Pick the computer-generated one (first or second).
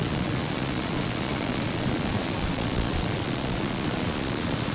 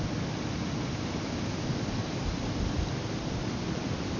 first